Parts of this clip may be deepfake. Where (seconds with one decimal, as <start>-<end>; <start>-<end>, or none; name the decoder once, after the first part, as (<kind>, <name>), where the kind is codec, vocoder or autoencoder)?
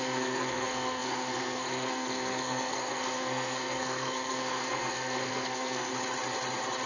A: 0.0-5.9 (codec, SNAC)